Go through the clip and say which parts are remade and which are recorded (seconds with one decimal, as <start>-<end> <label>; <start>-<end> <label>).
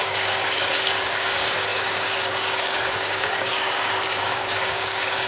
0.0-5.3 remade